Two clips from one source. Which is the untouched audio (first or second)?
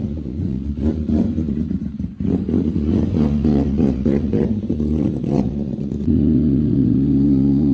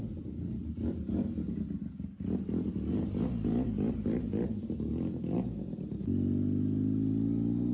second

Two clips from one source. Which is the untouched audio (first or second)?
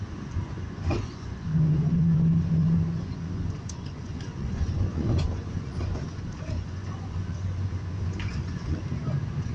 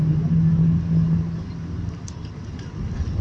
second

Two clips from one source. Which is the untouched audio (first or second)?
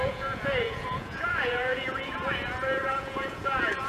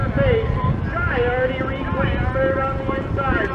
second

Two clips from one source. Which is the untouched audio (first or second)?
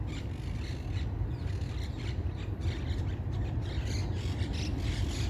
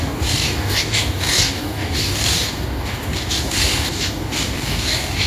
first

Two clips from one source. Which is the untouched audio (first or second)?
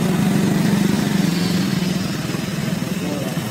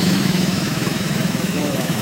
first